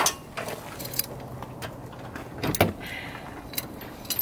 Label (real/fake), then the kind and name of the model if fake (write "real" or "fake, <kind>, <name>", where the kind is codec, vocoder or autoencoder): real